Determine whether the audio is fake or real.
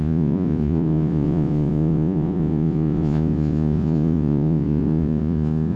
fake